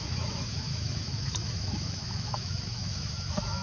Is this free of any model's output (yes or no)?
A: no